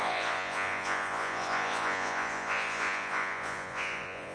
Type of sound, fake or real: fake